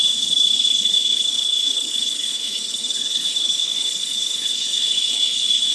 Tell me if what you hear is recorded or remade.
remade